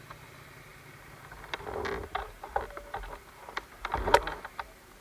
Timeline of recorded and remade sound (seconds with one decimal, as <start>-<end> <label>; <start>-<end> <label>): 0.0-5.0 recorded

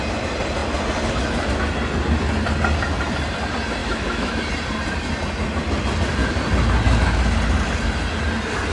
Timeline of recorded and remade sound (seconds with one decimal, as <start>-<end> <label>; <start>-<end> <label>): 0.0-3.8 recorded; 3.8-4.4 remade; 4.4-8.7 recorded

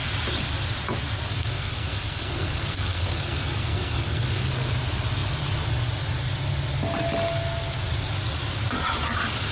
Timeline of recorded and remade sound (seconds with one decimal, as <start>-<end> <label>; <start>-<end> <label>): 0.0-1.3 recorded; 1.3-4.5 remade; 4.5-9.5 recorded

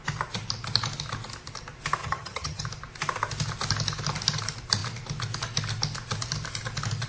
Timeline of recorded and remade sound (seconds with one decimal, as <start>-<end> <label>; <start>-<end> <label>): 0.0-2.0 recorded; 2.0-2.6 remade; 2.6-7.1 recorded

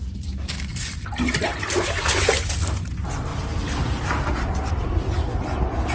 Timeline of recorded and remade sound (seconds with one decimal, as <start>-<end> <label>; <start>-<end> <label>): 0.0-5.9 recorded

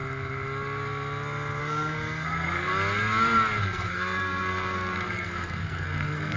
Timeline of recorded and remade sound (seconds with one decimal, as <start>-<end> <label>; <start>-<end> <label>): 0.0-1.6 recorded; 1.6-2.7 remade; 2.7-3.6 recorded; 3.6-6.4 remade